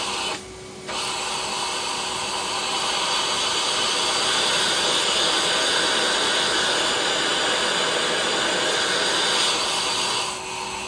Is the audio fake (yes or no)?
no